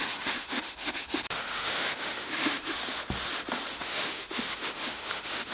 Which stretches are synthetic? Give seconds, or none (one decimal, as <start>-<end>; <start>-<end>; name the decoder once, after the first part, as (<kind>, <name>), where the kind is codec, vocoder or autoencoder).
0.0-2.8 (autoencoder, DAC-VAE); 3.7-5.5